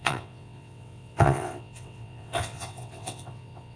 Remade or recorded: remade